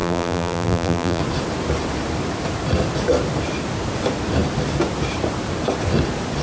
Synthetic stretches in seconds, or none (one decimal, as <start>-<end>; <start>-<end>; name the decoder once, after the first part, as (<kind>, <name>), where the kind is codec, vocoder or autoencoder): 0.0-1.2 (vocoder, BigVGAN v2)